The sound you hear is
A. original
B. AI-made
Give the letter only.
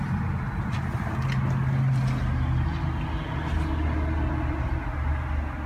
A